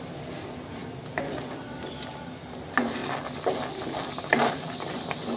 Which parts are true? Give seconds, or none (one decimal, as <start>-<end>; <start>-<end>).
0.0-5.4